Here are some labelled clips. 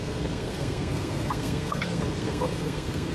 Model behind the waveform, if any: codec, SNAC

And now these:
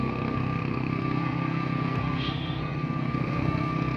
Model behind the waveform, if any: codec, SNAC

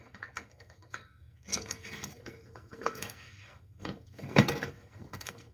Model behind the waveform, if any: codec, SNAC